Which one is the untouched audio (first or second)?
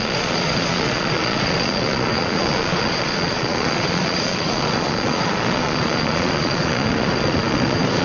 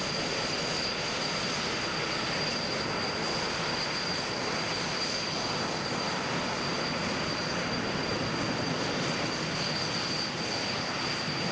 second